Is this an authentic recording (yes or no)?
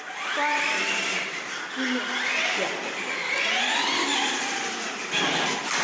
yes